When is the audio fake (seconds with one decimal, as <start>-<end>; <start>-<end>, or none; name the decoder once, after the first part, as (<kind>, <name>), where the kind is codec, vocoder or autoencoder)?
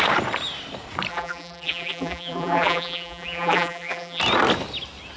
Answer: 1.1-4.2 (vocoder, BigVGAN v2)